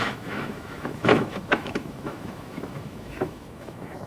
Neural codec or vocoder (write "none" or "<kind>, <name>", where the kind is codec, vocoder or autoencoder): autoencoder, DAC-VAE